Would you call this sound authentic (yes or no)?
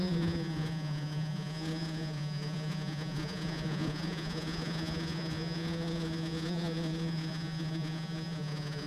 no